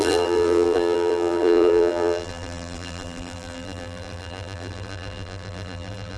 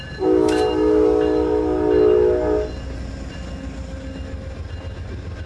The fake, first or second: first